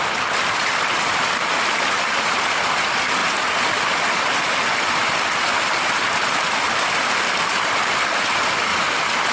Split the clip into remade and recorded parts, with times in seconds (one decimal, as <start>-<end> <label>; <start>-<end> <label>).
0.0-3.2 remade; 3.2-7.6 recorded; 7.6-8.7 remade; 8.7-9.3 recorded